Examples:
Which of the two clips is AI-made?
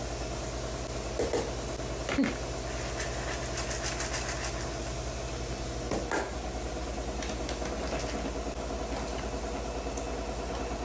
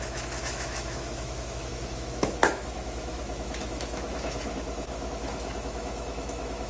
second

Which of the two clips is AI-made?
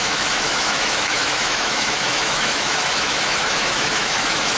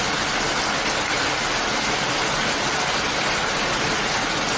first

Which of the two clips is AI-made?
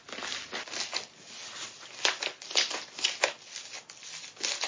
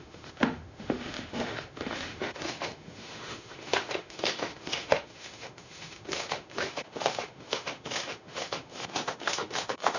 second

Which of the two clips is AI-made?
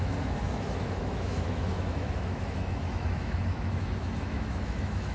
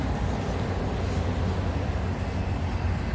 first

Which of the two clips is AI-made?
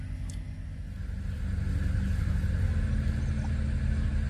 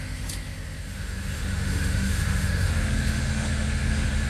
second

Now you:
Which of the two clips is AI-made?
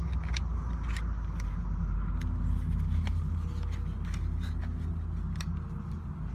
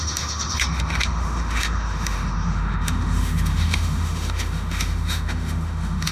second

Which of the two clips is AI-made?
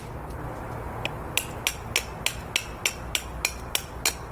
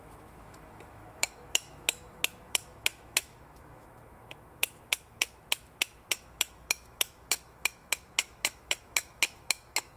second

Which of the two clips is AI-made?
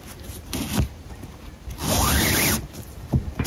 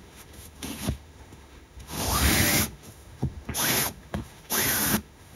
second